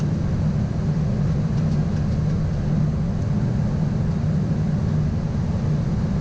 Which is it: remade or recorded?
recorded